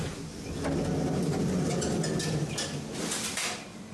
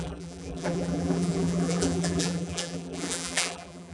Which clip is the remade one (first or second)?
second